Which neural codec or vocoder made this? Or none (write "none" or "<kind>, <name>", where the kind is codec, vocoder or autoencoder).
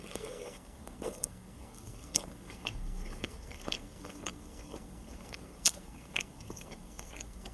codec, SNAC